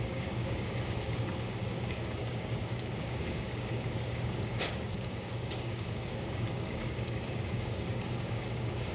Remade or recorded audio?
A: remade